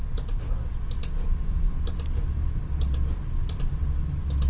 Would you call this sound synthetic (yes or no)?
no